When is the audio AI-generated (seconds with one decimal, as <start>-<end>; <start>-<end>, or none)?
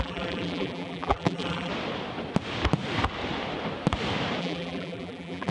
0.0-1.7; 4.4-5.5